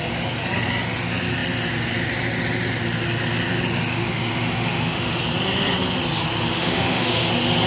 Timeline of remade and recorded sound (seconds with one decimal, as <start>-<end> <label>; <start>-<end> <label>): 0.0-3.9 recorded; 3.9-5.2 remade; 5.2-6.5 recorded; 6.5-7.3 remade; 7.3-7.7 recorded

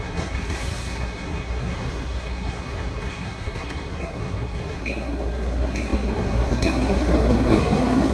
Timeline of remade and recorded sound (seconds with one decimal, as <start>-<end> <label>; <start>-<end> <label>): 0.0-8.1 remade